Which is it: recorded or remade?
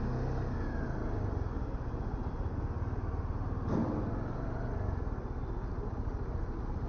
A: recorded